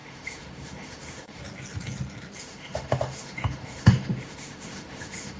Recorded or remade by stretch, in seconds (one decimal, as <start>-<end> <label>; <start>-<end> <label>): 0.0-1.4 remade; 1.4-2.4 recorded; 2.4-5.4 remade